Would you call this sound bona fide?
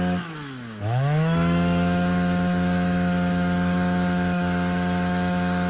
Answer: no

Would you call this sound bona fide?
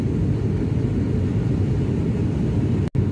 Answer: yes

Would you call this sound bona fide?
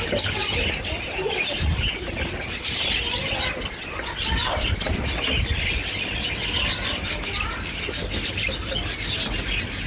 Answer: yes